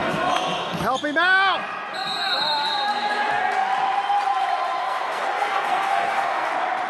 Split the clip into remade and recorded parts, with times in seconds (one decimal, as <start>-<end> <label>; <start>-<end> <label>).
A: 0.0-0.8 remade; 0.8-4.8 recorded; 4.8-6.5 remade; 6.5-6.9 recorded